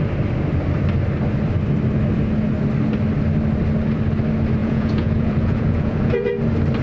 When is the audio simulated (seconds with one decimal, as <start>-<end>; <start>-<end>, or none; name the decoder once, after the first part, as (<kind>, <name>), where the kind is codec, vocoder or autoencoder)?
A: 4.6-6.3 (vocoder, Vocos)

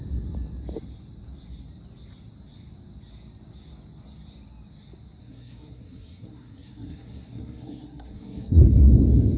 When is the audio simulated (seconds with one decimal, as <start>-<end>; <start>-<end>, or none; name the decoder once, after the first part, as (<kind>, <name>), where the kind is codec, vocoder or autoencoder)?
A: 5.2-8.9 (codec, SNAC)

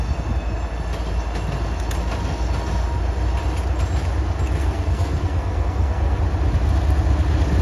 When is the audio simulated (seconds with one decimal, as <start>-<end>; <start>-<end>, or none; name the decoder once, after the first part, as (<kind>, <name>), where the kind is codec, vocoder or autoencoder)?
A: 4.6-6.2 (codec, SNAC)